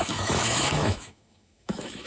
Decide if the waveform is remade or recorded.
remade